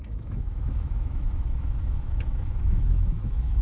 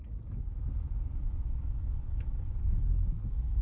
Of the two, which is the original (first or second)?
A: second